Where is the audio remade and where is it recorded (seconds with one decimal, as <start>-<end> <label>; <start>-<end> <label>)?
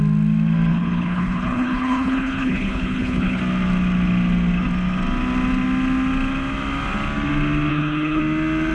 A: 0.0-0.7 recorded; 0.7-3.4 remade; 3.4-7.7 recorded; 7.7-8.2 remade; 8.2-8.7 recorded